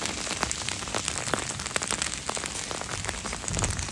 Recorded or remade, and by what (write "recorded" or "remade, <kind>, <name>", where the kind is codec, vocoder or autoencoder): recorded